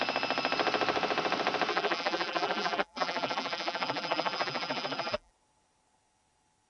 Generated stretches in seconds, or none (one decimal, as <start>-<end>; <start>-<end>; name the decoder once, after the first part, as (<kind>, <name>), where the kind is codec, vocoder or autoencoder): 1.7-5.3 (vocoder, BigVGAN v2)